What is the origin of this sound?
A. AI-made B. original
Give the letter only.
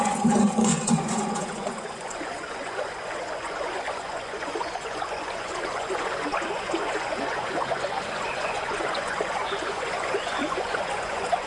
A